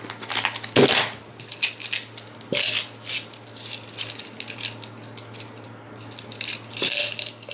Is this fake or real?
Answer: real